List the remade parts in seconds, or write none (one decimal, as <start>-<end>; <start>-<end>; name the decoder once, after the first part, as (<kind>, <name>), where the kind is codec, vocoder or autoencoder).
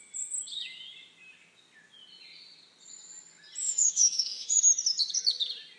3.6-4.6 (autoencoder, DAC-VAE)